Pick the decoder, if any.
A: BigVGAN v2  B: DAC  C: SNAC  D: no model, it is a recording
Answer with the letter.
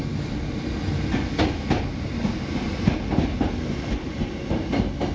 D